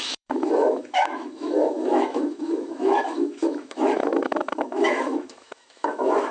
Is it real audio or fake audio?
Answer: fake